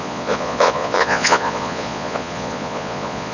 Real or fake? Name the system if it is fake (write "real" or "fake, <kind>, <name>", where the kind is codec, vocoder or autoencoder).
fake, vocoder, Vocos